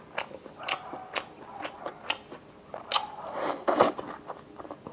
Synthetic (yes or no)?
no